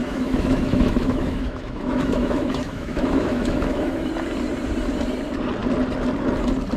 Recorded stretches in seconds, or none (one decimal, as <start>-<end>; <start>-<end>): 4.1-6.8